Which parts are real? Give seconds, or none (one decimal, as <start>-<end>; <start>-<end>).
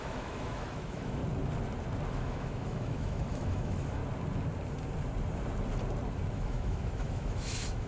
1.2-2.1; 4.0-6.3